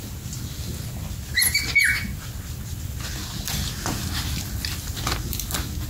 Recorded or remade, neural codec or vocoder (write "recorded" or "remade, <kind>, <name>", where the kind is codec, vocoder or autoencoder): recorded